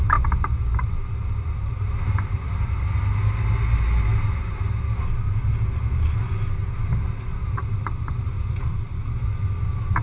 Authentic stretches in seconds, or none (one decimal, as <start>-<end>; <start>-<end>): 0.0-10.0